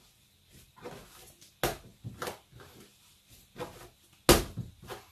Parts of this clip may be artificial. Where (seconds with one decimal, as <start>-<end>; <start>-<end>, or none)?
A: none